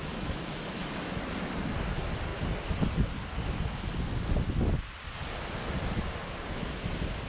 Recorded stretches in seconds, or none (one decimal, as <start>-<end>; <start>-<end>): 1.2-7.3